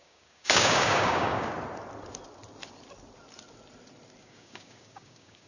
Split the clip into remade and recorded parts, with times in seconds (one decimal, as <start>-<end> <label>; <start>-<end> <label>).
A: 0.0-1.5 remade; 1.5-4.2 recorded; 4.2-5.5 remade